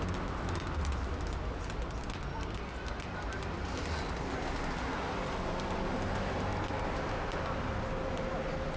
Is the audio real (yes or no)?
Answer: yes